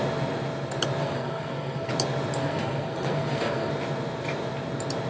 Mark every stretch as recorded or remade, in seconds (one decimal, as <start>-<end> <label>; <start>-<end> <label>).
0.0-1.0 recorded; 1.0-1.9 remade; 1.9-2.4 recorded; 2.4-3.7 remade; 3.7-5.1 recorded